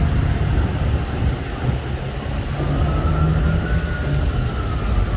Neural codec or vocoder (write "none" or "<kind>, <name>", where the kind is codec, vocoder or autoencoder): none